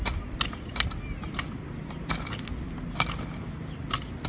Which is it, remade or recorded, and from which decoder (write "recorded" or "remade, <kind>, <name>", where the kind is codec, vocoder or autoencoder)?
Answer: recorded